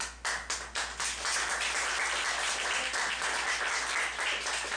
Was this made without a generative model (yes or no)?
yes